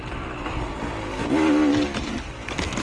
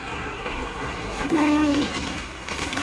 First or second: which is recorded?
first